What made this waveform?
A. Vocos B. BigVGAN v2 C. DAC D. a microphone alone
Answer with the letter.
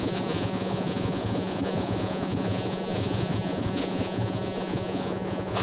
A